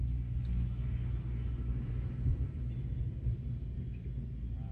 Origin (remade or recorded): recorded